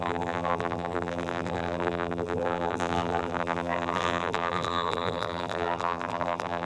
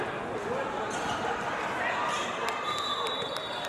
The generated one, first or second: first